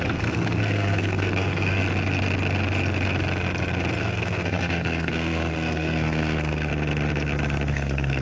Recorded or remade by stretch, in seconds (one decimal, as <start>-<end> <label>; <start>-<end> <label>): 0.0-1.8 remade; 1.8-4.0 recorded; 4.0-6.7 remade; 6.7-7.7 recorded; 7.7-8.2 remade